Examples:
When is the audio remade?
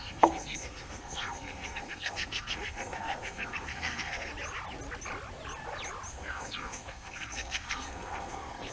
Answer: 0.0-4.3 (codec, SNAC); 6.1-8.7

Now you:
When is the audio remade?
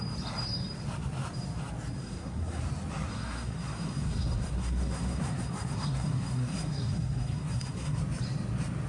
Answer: 2.0-2.6 (codec, SNAC); 3.1-8.0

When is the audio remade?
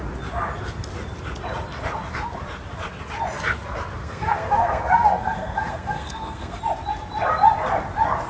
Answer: 4.0-6.6 (codec, SNAC)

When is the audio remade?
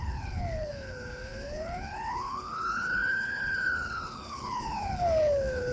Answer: 0.0-5.7 (codec, HILCodec)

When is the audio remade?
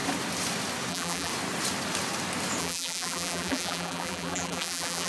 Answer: 0.9-1.3 (vocoder, BigVGAN v2); 2.6-5.1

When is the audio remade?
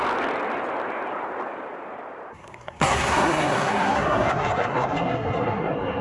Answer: 2.3-6.0 (codec, SNAC)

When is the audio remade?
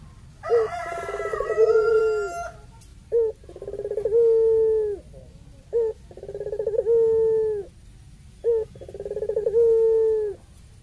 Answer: 1.3-2.0 (vocoder, Vocos)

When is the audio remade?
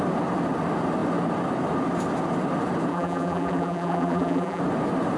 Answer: 2.9-4.6 (vocoder, BigVGAN v2)